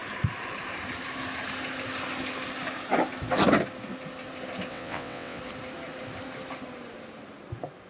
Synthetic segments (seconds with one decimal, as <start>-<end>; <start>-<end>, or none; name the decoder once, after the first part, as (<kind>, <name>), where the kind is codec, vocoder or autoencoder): 4.7-5.4 (vocoder, WaveNeXt)

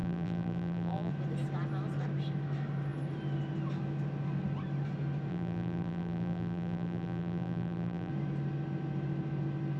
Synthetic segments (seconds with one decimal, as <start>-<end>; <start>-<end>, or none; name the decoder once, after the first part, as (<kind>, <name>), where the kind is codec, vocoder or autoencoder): 0.0-1.1 (vocoder, BigVGAN v2); 5.3-8.1

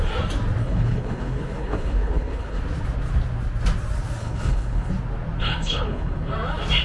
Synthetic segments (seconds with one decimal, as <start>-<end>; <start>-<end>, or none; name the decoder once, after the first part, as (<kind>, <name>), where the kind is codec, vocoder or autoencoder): 0.6-2.6 (codec, HILCodec); 4.2-4.9; 5.4-6.3

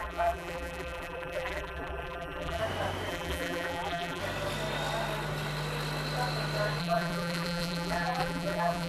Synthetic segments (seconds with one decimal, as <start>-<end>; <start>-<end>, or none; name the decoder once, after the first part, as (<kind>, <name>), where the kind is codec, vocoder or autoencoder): 0.0-2.6 (vocoder, BigVGAN v2); 3.1-4.2; 6.8-8.9

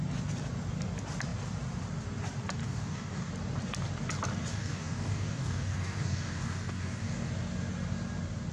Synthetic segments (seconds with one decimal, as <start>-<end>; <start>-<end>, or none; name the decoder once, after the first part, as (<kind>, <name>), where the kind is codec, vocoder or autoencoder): 2.6-3.3 (codec, DAC); 4.5-7.3